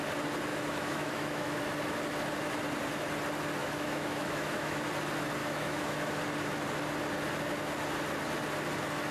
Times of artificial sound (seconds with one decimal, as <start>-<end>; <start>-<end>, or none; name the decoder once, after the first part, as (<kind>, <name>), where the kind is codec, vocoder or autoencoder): 0.5-1.6 (autoencoder, DAC-VAE); 3.6-4.9; 5.4-6.2